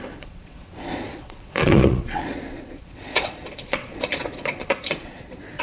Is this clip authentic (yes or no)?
no